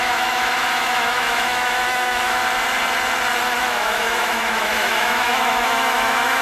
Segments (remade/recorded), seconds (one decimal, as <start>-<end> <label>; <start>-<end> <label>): 0.0-2.4 remade; 2.4-3.6 recorded; 3.6-6.4 remade